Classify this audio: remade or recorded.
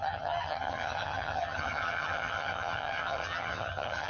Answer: remade